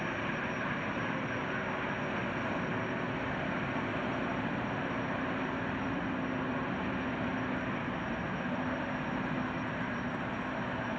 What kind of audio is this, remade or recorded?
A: recorded